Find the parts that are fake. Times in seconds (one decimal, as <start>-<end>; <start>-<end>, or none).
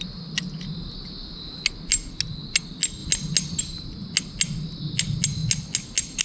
none